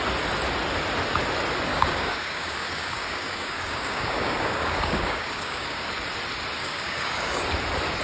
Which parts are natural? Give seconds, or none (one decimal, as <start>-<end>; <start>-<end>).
0.0-1.7; 5.8-6.6; 7.4-8.0